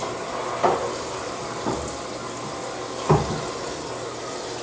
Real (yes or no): yes